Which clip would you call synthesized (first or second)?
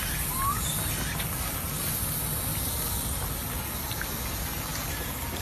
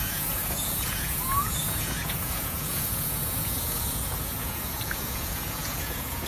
second